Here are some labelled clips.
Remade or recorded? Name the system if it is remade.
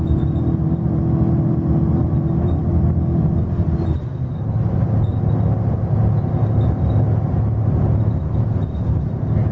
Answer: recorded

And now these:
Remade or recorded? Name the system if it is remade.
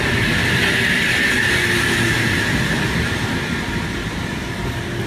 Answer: recorded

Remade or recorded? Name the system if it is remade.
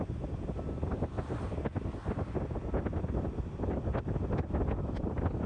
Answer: recorded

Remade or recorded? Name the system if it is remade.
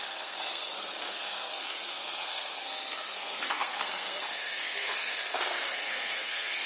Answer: remade, codec, SNAC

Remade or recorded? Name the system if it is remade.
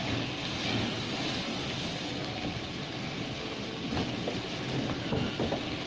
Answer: recorded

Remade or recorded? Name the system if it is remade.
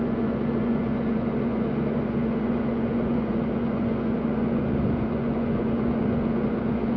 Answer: remade, vocoder, Vocos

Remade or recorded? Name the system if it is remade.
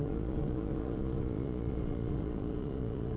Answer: remade, vocoder, Vocos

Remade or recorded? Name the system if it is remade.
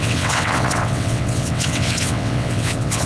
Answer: remade, vocoder, WaveNeXt